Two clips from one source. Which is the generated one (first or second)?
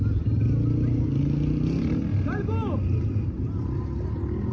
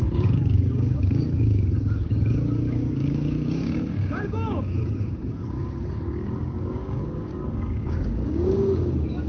second